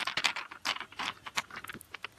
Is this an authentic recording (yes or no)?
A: yes